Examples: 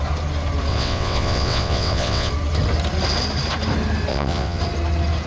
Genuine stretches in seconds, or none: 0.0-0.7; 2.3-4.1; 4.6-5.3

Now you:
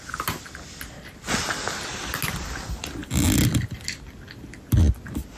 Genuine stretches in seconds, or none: 0.0-5.4